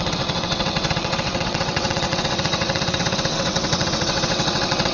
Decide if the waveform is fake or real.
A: fake